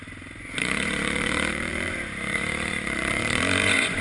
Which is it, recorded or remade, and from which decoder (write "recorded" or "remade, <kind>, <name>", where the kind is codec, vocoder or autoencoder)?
remade, vocoder, Vocos